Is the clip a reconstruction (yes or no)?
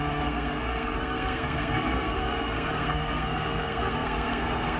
yes